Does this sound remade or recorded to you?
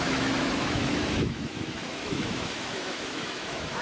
remade